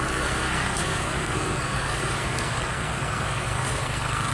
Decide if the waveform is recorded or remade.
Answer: remade